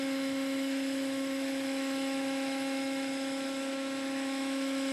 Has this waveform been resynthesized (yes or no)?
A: yes